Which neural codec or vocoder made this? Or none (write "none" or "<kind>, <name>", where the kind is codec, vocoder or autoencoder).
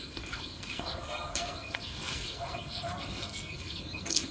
codec, SNAC